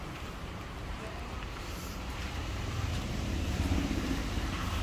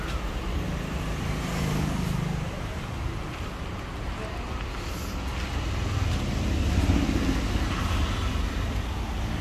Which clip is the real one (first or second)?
second